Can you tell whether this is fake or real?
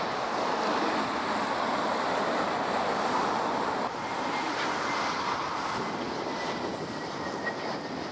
real